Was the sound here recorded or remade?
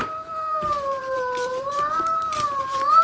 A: remade